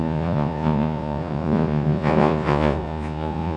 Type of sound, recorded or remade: remade